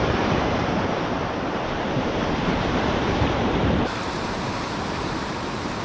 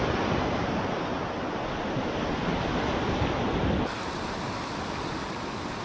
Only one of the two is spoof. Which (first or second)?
first